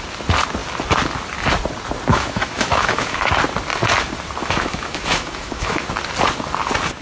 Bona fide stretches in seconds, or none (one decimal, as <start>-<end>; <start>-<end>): 0.0-2.1; 3.3-4.4; 5.8-7.0